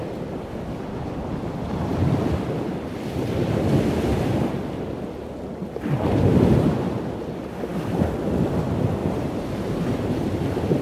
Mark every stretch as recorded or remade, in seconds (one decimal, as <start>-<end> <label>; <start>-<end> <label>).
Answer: 0.0-9.0 recorded; 9.0-10.1 remade; 10.1-10.8 recorded